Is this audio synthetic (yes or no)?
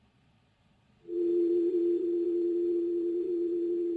yes